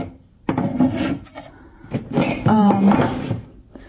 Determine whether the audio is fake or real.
fake